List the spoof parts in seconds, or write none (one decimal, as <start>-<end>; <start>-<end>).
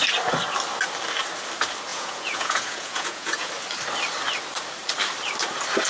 1.9-3.5